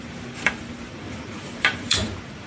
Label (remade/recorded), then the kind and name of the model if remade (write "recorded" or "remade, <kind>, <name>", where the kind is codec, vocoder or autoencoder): remade, vocoder, BigVGAN v2